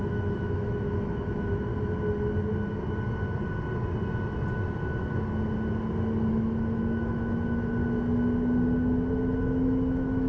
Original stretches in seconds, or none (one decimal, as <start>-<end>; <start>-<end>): 1.7-6.3; 7.8-9.1